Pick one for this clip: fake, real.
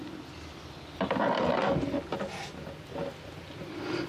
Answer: real